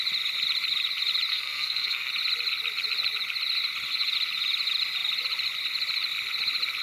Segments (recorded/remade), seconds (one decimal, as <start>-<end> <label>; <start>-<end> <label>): 0.0-1.3 recorded; 1.3-2.1 remade; 2.1-6.8 recorded